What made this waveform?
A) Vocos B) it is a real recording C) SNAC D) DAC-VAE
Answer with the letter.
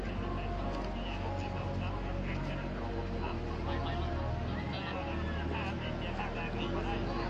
B